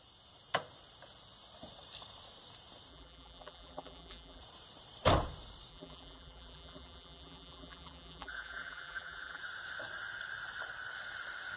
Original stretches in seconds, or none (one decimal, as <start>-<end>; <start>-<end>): 0.0-2.9; 4.4-5.7; 9.4-11.6